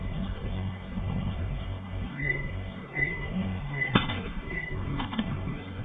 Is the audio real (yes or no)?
no